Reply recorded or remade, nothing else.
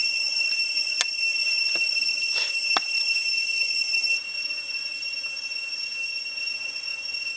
recorded